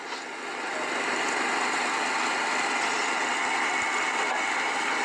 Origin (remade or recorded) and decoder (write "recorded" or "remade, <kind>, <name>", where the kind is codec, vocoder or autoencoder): recorded